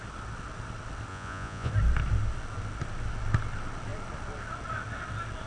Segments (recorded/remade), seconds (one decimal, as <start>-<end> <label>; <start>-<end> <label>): 0.0-1.1 recorded; 1.1-1.7 remade; 1.7-5.5 recorded